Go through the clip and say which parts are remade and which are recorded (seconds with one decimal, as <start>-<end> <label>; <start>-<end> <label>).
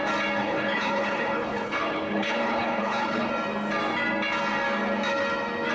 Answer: 0.0-0.4 recorded; 0.4-3.3 remade; 3.3-5.7 recorded